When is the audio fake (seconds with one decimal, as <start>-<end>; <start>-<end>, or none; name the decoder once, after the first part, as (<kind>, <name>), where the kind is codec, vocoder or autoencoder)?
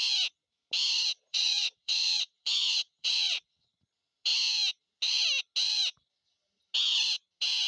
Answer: 1.3-3.8 (vocoder, WaveNeXt)